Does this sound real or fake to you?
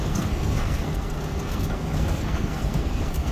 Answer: fake